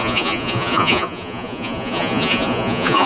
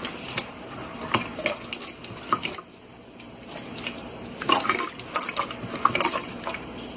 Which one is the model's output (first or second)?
first